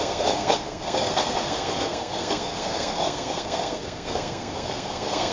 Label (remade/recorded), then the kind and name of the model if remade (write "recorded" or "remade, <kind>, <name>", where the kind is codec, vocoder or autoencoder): remade, codec, SNAC